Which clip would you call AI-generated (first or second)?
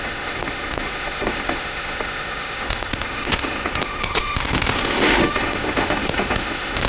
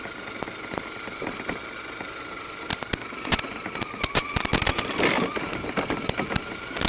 first